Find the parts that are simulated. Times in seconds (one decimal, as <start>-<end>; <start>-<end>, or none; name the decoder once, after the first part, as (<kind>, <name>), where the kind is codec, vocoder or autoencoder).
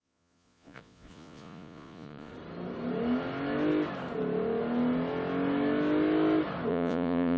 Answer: 0.0-2.3 (vocoder, Vocos); 6.7-7.4